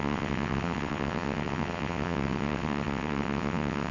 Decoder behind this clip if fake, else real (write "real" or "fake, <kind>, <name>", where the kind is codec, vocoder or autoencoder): fake, vocoder, WaveNeXt